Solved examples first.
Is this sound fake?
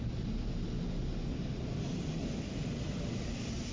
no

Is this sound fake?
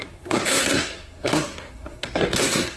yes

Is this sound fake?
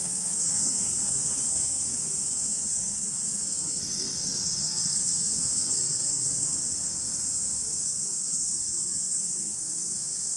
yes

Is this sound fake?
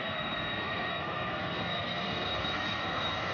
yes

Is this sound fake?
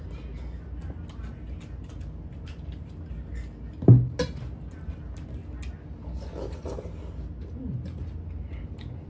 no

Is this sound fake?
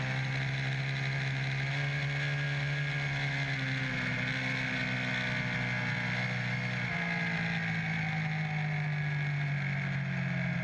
no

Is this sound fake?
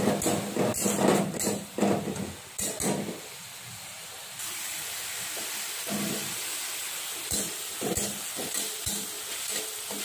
no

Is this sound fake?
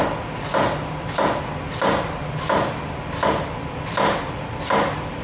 no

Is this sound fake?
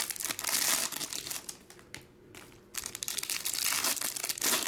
no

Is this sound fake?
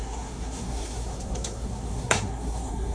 yes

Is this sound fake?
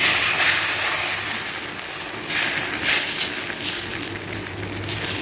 no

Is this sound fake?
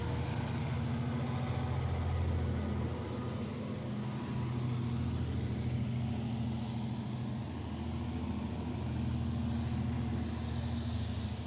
no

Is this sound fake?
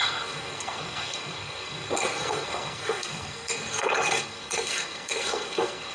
yes